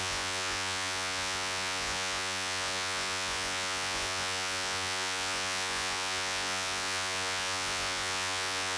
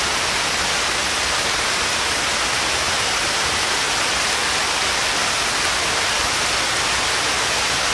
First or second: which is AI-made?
first